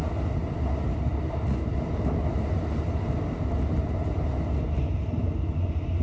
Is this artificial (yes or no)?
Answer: no